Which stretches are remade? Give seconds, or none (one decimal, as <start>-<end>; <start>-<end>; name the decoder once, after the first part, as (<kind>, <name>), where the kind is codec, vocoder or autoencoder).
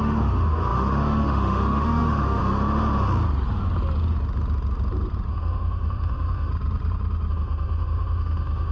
0.0-2.4 (autoencoder, DAC-VAE); 5.3-6.5; 7.3-8.7